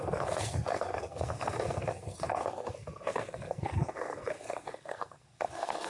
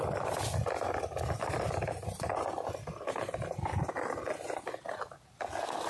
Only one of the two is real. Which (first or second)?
second